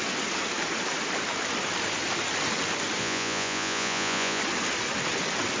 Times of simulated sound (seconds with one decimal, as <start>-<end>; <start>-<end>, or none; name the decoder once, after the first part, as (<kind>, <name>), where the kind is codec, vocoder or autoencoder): 3.0-4.4 (vocoder, Vocos)